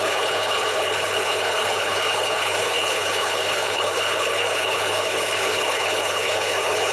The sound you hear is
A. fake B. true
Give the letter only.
A